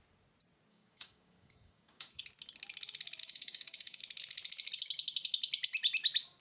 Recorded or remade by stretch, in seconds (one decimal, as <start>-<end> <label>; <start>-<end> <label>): 0.0-0.7 recorded; 0.7-2.2 remade; 2.2-3.2 recorded; 3.2-4.0 remade; 4.0-6.4 recorded